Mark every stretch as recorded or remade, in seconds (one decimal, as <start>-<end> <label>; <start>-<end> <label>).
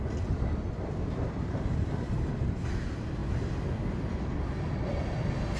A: 0.0-5.6 recorded